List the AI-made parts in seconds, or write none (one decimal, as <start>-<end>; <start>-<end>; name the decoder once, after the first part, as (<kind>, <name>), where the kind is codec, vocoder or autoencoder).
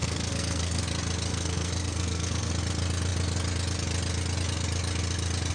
0.0-0.8 (codec, SNAC); 1.3-2.5